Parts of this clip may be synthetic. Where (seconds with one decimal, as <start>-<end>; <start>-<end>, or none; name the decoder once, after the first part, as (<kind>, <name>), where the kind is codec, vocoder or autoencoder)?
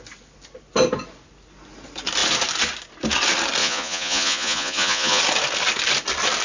3.6-5.2 (vocoder, Vocos)